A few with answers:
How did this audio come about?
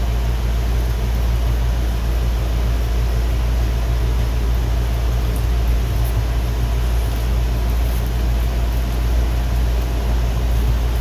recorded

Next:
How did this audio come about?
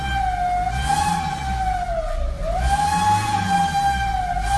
recorded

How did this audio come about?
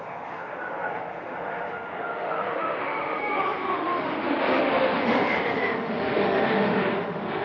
remade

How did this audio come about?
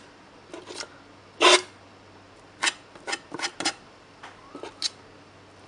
recorded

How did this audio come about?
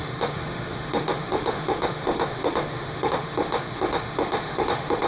remade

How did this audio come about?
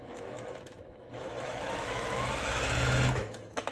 remade